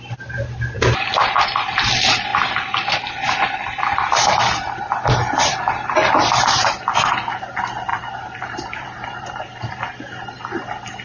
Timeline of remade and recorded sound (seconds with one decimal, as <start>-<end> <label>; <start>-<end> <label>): 0.0-7.9 recorded; 7.9-9.7 remade; 9.7-11.0 recorded